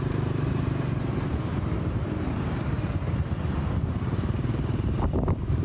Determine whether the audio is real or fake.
fake